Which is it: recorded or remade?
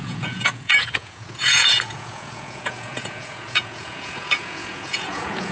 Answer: remade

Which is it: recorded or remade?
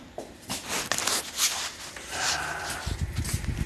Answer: remade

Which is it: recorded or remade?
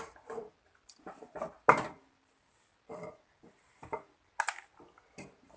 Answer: recorded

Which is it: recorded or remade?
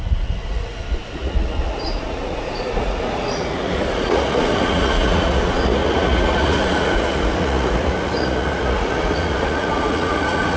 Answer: remade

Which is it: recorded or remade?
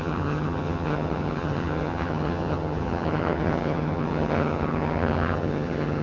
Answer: remade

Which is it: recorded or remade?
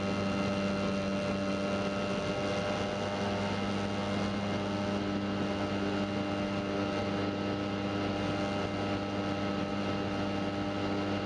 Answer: recorded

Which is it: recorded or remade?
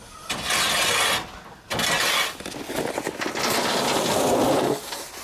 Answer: recorded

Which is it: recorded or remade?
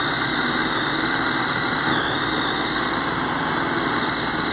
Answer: recorded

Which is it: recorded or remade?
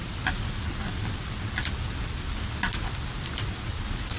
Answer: recorded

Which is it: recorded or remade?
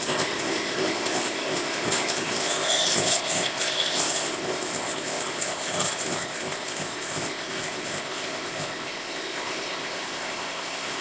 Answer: remade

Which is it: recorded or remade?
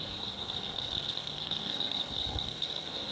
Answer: remade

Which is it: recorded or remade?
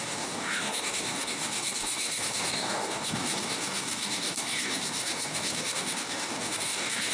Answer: remade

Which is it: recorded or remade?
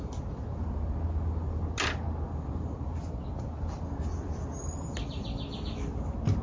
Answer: recorded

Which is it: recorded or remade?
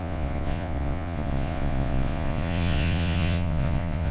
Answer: remade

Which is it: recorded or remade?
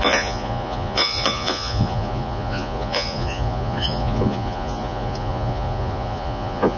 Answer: remade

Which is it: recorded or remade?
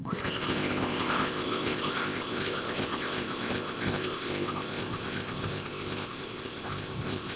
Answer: remade